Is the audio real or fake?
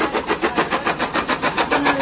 real